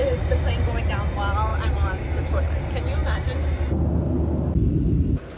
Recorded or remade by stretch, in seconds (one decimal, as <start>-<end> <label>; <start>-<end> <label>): 0.0-0.8 remade; 0.8-5.4 recorded